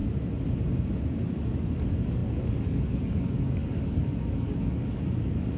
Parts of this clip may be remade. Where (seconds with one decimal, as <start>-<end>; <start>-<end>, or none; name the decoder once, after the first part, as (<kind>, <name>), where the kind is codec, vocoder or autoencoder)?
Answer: 1.8-5.6 (codec, DAC)